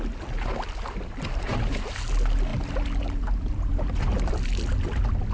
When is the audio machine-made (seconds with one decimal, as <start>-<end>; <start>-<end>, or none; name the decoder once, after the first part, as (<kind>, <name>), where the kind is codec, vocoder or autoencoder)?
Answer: none